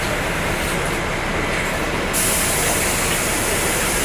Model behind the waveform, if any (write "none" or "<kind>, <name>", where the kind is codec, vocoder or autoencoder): none